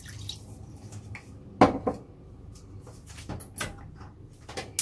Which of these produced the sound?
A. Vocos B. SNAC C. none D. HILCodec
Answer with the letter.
C